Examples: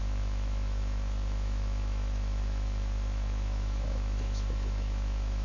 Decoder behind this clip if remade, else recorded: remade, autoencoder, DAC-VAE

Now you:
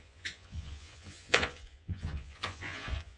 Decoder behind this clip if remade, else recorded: remade, vocoder, Vocos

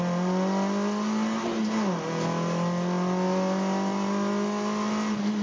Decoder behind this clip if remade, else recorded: recorded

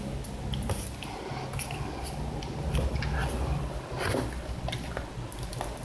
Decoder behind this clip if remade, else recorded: recorded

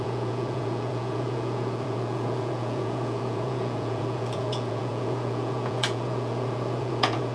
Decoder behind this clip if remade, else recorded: remade, vocoder, Vocos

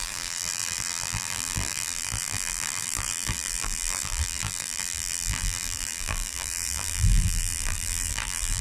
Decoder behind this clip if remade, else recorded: remade, vocoder, BigVGAN v2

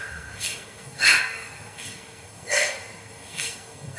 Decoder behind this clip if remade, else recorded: remade, codec, SNAC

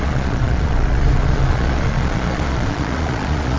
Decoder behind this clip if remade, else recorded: remade, vocoder, Vocos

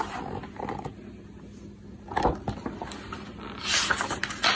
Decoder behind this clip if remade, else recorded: recorded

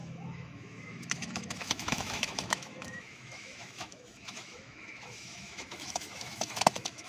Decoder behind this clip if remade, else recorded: remade, autoencoder, DAC-VAE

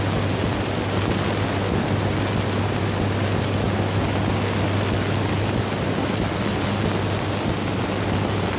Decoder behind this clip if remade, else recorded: recorded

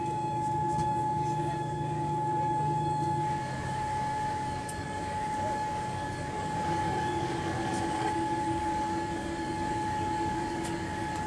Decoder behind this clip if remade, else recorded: remade, codec, DAC